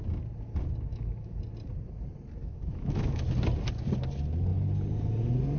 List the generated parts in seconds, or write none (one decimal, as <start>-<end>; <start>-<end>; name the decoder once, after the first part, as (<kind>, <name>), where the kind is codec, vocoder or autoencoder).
0.9-1.4 (autoencoder, DAC-VAE); 2.4-3.2